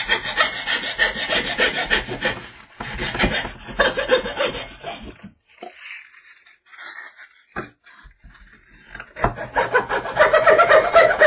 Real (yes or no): yes